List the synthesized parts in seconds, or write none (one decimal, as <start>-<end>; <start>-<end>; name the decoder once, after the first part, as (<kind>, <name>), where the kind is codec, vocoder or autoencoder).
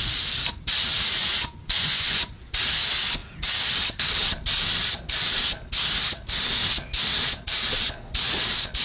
1.2-2.3 (vocoder, Vocos)